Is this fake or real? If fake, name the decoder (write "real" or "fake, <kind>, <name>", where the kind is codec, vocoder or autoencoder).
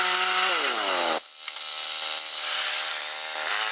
real